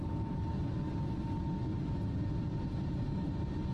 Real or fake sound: real